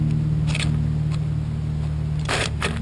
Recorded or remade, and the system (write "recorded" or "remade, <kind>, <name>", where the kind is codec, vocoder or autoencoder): recorded